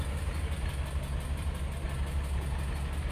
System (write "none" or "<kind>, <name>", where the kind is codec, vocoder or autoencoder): none